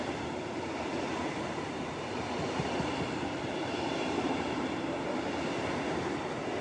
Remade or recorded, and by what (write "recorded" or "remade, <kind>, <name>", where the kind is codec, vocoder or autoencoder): remade, vocoder, BigVGAN v2